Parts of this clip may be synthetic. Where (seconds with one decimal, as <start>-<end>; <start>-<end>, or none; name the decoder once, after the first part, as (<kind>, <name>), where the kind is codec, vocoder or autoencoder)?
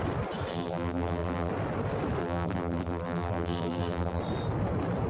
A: 0.5-1.5 (vocoder, BigVGAN v2); 2.2-4.2